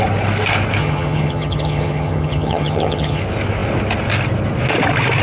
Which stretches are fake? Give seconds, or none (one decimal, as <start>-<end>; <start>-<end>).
0.8-3.2